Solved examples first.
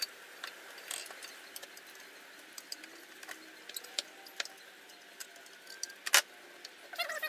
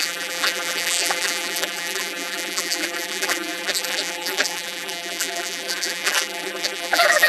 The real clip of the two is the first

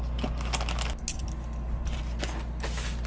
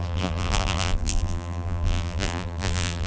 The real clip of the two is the first